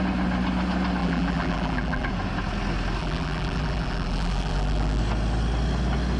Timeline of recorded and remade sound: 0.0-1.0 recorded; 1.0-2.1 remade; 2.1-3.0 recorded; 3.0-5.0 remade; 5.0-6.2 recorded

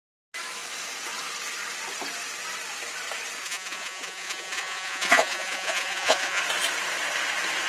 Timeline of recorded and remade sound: 0.0-3.4 recorded; 3.4-6.4 remade; 6.4-7.7 recorded